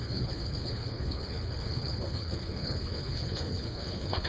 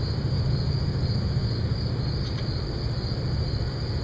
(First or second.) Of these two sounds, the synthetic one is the first